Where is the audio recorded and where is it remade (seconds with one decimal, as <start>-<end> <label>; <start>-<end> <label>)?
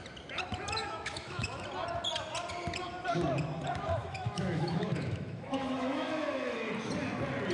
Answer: 0.0-0.8 recorded; 0.8-1.6 remade; 1.6-4.0 recorded; 4.0-6.7 remade; 6.7-7.5 recorded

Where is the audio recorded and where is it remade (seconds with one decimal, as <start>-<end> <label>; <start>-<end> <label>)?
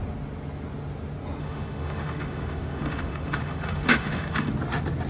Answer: 0.0-1.4 recorded; 1.4-4.5 remade; 4.5-5.1 recorded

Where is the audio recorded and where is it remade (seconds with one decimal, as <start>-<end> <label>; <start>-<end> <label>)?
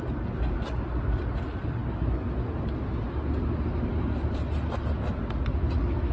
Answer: 0.0-6.1 recorded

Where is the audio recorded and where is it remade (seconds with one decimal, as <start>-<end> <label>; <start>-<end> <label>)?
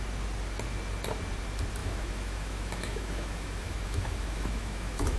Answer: 0.0-1.8 recorded; 1.8-5.2 remade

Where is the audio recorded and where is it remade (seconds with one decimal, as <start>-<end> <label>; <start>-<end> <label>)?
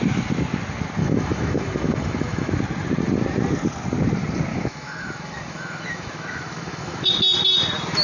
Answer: 0.0-1.0 recorded; 1.0-2.5 remade; 2.5-4.5 recorded; 4.5-7.0 remade; 7.0-8.0 recorded